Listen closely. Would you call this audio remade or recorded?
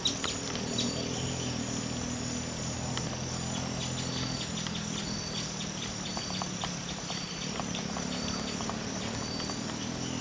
recorded